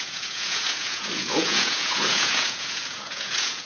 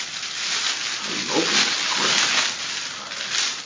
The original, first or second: second